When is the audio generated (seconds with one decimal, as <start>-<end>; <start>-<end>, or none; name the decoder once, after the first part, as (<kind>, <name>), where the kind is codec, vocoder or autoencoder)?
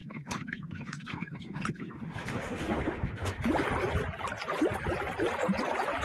0.0-3.4 (autoencoder, DAC-VAE)